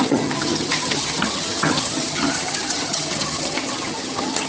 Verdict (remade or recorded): remade